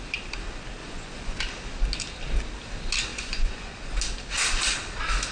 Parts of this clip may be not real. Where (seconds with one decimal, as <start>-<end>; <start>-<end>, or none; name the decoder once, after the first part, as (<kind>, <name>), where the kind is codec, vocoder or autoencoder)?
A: 0.8-1.4 (vocoder, Vocos); 3.1-3.9